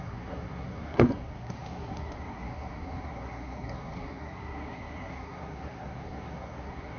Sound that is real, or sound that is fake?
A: fake